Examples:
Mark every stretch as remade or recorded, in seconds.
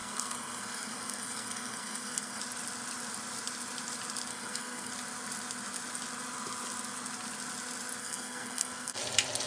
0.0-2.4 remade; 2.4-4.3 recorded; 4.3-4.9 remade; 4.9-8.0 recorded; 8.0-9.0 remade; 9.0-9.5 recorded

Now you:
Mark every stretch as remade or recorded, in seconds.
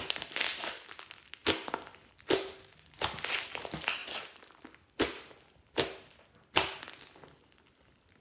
0.0-8.2 recorded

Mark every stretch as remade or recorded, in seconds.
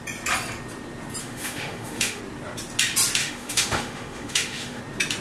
0.0-1.2 recorded; 1.2-2.2 remade; 2.2-3.2 recorded; 3.2-4.8 remade; 4.8-5.2 recorded